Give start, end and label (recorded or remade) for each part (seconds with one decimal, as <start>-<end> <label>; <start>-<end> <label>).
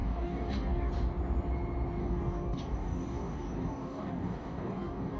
0.0-0.9 remade; 0.9-2.0 recorded; 2.0-5.2 remade